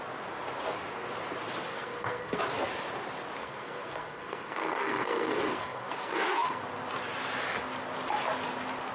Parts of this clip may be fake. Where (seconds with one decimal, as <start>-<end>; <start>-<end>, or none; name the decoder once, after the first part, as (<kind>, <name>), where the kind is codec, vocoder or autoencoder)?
1.7-2.4 (codec, SNAC); 3.4-6.6